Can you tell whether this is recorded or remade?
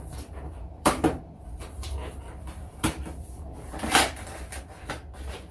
remade